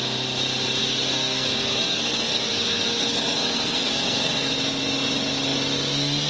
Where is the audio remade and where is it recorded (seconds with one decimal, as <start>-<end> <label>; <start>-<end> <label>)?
0.0-0.8 recorded; 0.8-4.5 remade; 4.5-6.3 recorded